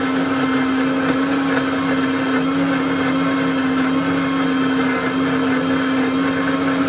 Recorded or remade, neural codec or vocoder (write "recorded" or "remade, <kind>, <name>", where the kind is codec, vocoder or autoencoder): recorded